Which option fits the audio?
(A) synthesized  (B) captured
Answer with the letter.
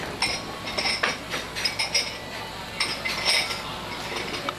B